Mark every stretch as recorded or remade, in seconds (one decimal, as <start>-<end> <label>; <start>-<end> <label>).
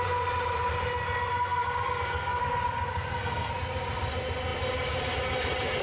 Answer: 0.0-1.3 recorded; 1.3-2.4 remade; 2.4-2.9 recorded; 2.9-3.5 remade; 3.5-5.8 recorded